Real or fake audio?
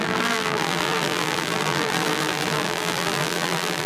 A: fake